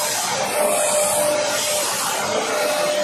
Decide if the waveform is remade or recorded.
recorded